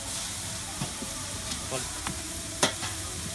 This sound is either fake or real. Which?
fake